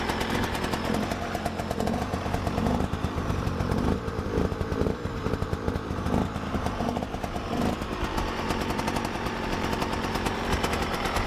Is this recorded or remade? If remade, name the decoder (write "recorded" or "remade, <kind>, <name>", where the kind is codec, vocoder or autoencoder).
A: remade, vocoder, BigVGAN v2